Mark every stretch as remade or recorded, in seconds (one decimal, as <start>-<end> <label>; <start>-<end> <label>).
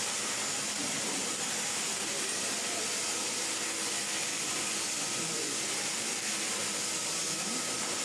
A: 0.0-4.3 recorded; 4.3-5.6 remade; 5.6-8.0 recorded